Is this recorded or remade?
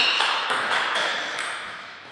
remade